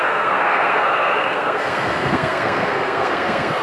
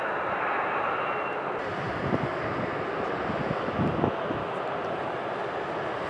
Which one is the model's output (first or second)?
first